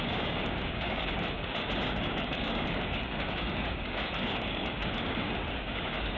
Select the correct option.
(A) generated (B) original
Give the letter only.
A